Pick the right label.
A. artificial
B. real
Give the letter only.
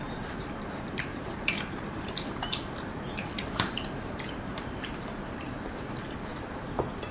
A